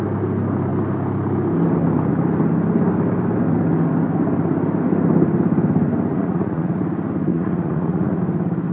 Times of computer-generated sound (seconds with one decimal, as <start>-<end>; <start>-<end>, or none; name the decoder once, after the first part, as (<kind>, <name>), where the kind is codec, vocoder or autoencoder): 6.1-6.8 (vocoder, Vocos); 7.3-8.2